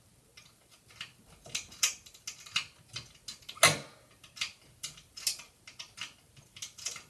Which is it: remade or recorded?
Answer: recorded